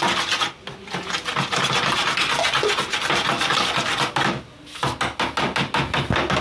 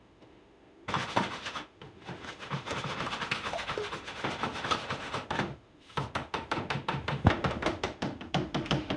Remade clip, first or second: second